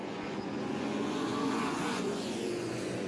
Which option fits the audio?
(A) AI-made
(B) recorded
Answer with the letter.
A